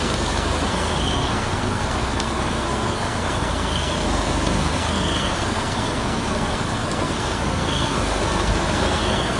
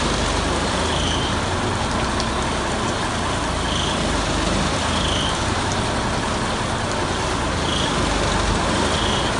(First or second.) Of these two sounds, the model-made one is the first